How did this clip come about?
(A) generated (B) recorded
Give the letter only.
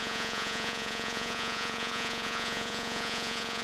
A